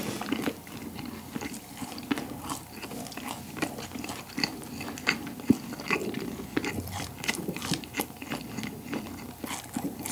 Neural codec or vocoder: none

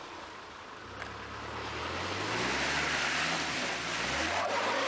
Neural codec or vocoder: none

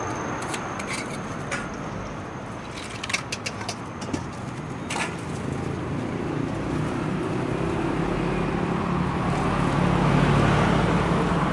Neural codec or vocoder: none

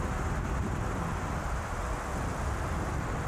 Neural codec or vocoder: vocoder, BigVGAN v2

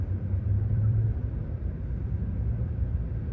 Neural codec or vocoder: vocoder, BigVGAN v2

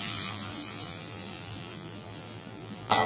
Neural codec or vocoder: vocoder, BigVGAN v2